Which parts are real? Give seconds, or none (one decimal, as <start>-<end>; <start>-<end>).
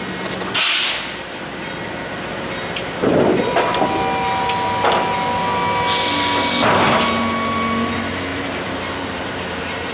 0.0-8.3